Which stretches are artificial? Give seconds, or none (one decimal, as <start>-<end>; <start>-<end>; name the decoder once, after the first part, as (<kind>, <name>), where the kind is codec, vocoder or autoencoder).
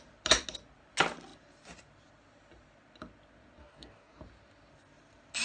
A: 3.6-4.2 (codec, DAC)